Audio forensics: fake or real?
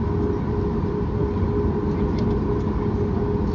real